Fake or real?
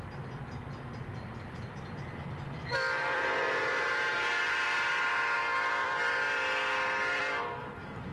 real